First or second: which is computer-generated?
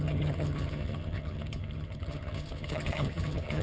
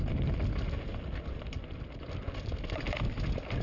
first